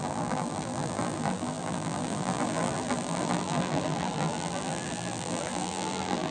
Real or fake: fake